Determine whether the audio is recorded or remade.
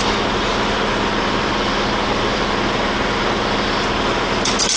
recorded